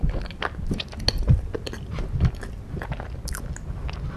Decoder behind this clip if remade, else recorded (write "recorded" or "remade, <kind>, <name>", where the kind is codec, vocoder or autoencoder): recorded